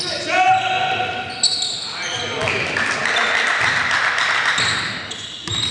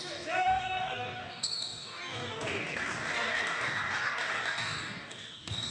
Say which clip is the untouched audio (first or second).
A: first